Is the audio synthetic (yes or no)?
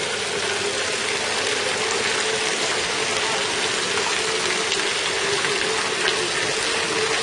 no